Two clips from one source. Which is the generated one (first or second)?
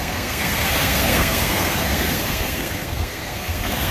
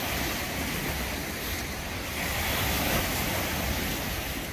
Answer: first